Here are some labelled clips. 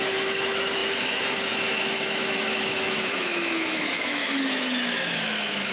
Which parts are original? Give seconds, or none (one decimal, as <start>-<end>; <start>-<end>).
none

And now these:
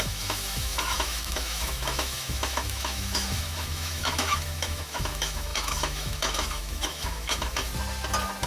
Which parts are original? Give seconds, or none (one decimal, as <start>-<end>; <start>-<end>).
7.7-8.5

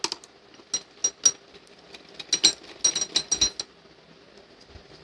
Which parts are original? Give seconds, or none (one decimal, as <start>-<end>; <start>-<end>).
0.0-5.0

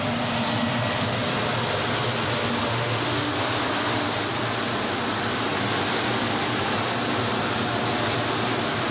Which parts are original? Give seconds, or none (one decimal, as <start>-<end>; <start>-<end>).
0.0-2.6; 3.3-8.9

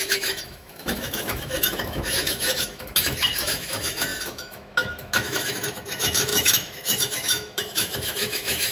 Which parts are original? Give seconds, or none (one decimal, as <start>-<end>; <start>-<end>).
none